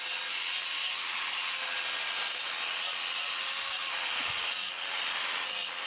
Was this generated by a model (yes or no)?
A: no